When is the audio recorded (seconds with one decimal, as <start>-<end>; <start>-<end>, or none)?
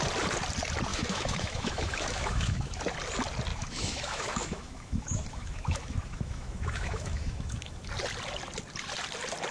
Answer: 0.0-0.9; 2.8-3.5; 7.9-9.5